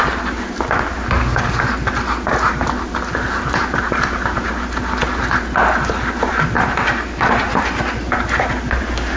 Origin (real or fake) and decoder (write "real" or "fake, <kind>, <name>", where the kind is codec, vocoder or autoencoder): real